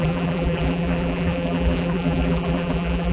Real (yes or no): no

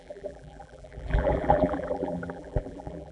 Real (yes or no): no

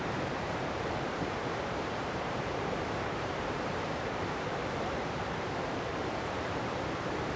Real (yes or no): no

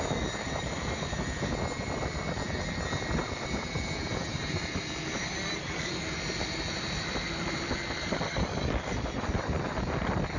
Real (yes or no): no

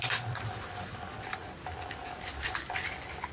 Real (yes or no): no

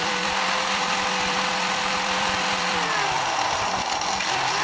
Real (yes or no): no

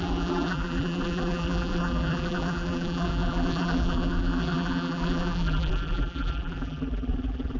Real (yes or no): no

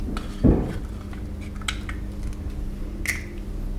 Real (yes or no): yes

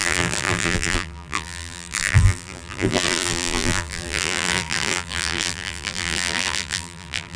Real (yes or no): no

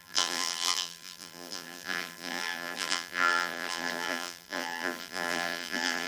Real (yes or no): no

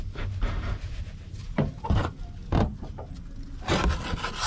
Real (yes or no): yes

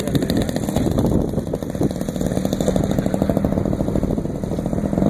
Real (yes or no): yes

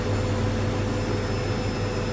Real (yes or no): yes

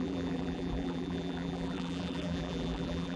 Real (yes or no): no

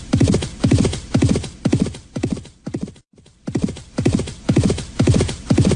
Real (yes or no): no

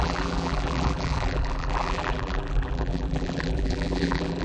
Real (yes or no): no